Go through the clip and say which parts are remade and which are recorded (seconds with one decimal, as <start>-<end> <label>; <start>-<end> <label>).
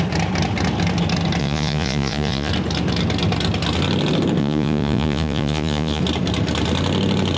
0.0-1.4 recorded; 1.4-2.5 remade; 2.5-4.4 recorded; 4.4-6.0 remade; 6.0-7.4 recorded